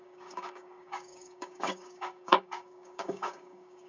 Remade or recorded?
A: remade